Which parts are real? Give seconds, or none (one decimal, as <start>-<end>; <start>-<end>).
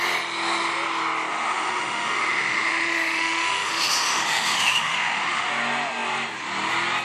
0.0-1.3; 5.5-7.0